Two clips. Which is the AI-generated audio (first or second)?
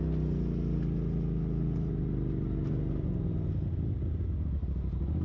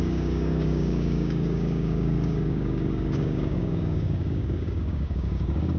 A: second